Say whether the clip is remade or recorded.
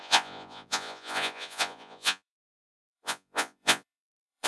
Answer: remade